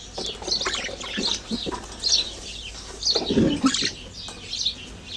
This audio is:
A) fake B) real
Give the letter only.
B